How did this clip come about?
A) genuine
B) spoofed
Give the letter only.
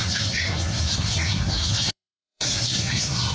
B